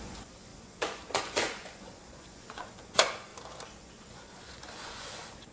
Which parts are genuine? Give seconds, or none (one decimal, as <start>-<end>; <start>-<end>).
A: 3.3-3.8